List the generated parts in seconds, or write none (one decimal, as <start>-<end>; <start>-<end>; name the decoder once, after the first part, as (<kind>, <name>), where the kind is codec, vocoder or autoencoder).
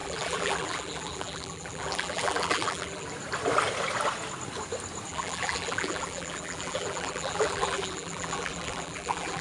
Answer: 0.0-3.1 (vocoder, BigVGAN v2); 5.1-9.4